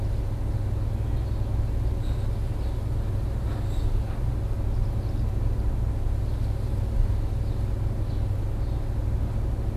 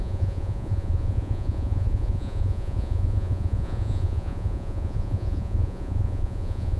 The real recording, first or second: first